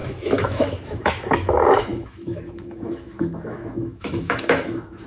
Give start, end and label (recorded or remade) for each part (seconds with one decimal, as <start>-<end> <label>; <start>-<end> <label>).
0.0-5.1 remade